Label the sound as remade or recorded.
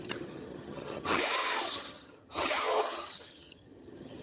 remade